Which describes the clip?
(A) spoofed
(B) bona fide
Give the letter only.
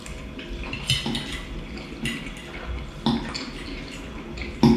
B